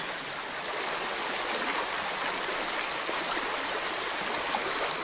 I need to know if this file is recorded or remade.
recorded